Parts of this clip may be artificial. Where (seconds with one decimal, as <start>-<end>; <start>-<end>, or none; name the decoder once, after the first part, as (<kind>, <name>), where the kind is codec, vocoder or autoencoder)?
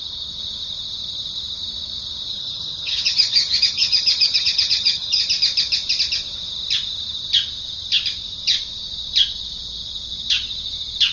2.3-5.2 (vocoder, HiFi-GAN)